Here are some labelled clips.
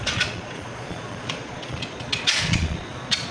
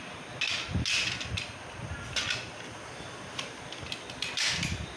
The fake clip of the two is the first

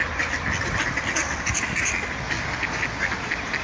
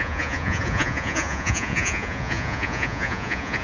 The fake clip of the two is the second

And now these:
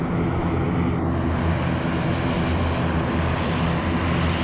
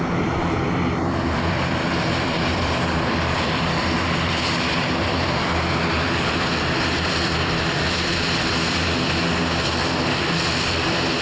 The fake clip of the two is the second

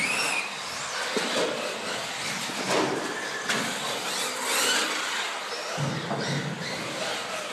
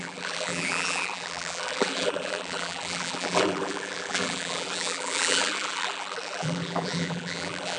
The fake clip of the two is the second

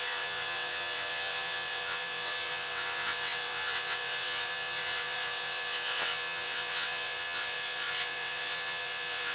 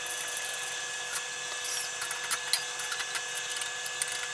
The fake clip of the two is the first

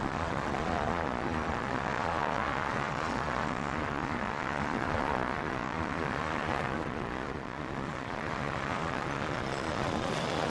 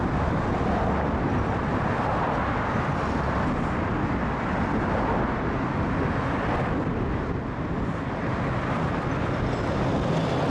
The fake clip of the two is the first